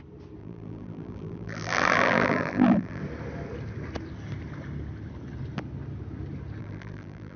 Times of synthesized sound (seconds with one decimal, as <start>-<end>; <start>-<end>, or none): 0.4-3.0; 6.6-7.4